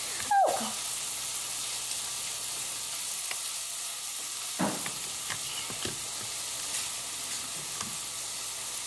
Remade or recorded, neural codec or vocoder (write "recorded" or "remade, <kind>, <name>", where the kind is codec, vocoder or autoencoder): recorded